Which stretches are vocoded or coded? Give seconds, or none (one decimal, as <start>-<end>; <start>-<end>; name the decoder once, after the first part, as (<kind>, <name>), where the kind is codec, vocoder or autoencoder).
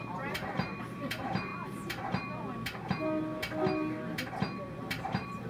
0.0-1.5 (vocoder, BigVGAN v2); 4.8-5.5